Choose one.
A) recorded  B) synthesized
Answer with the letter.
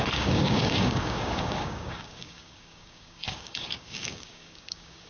B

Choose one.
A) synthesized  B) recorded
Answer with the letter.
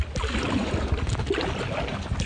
B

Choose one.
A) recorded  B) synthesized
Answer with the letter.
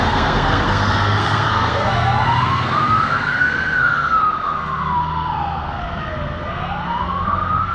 B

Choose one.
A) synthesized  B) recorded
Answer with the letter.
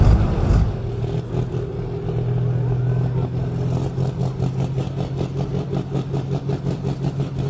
B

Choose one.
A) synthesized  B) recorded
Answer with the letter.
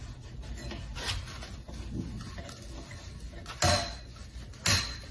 B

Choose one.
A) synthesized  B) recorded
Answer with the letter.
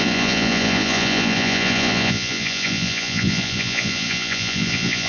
A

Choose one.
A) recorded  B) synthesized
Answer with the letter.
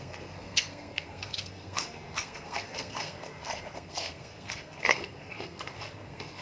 B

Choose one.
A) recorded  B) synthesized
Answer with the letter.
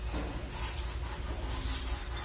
A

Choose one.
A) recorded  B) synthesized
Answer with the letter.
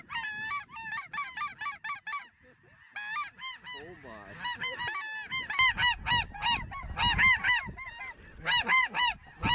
A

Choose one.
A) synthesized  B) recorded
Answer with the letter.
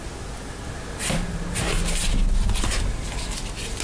B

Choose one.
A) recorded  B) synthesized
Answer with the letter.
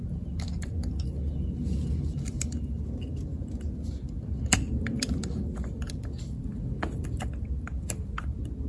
A